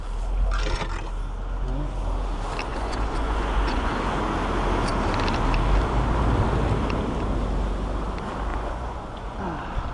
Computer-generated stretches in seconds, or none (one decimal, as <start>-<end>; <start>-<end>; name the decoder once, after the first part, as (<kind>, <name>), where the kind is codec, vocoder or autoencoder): 2.7-3.9 (vocoder, Vocos); 8.5-9.4